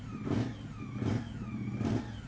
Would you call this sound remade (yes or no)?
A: no